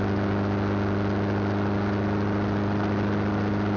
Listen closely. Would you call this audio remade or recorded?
recorded